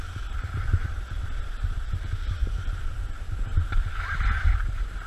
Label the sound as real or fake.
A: fake